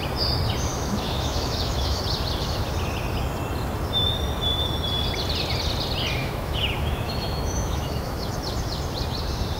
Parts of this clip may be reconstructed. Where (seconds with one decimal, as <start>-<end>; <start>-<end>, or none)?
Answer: 0.7-2.0; 6.2-8.3